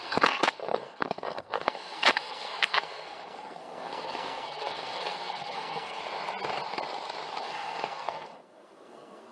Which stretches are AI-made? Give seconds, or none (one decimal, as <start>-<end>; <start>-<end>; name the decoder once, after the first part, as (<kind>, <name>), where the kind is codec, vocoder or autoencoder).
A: 0.0-6.0 (codec, SNAC); 7.4-9.3